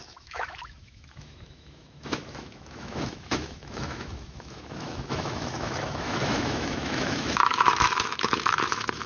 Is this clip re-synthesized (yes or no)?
yes